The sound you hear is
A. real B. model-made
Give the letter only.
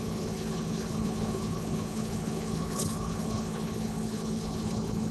B